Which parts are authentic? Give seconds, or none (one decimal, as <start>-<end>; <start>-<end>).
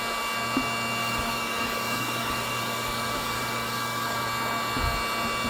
0.0-1.0; 4.3-5.5